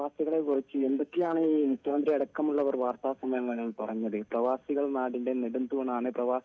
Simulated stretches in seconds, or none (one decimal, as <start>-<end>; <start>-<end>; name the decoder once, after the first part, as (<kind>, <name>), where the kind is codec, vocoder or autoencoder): 0.7-2.0 (codec, SNAC); 3.2-3.9